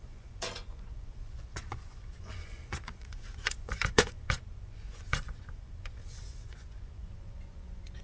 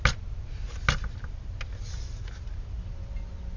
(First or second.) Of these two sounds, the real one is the second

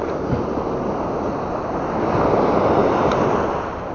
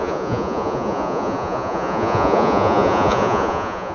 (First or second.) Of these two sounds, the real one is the first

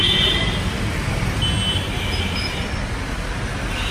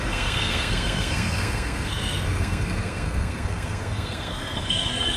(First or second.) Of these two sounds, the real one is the first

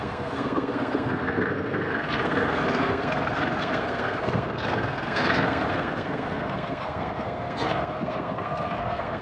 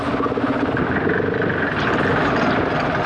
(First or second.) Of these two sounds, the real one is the second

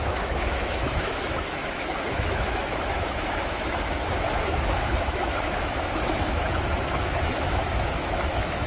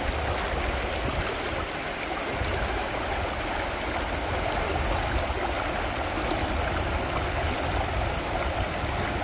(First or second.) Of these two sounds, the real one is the second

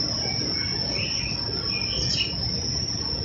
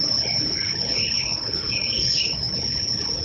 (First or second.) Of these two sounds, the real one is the first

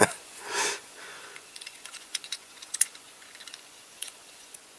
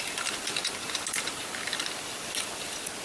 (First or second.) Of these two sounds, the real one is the second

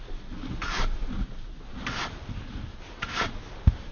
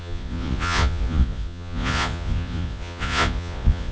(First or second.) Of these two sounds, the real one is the first